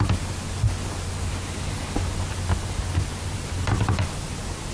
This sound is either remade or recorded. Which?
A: recorded